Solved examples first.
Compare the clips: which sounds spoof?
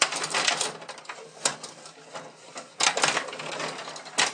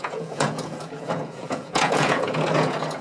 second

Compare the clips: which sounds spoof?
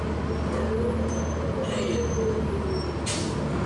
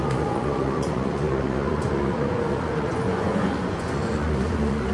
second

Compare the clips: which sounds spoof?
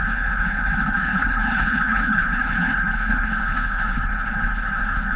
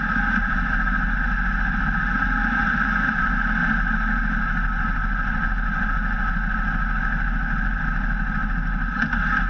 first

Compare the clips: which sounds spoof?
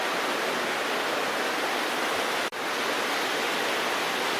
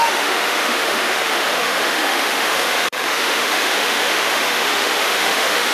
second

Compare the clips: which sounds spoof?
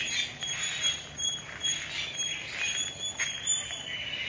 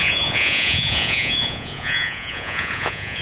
second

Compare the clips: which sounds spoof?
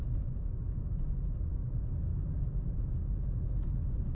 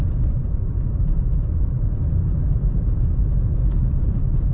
second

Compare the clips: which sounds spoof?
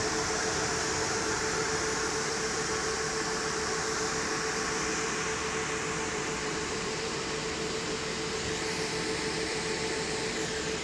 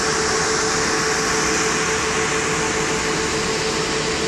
first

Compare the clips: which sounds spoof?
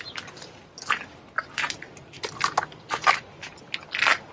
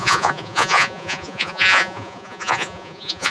second